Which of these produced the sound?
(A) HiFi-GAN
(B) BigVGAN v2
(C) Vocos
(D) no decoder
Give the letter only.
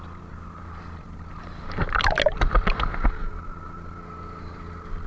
D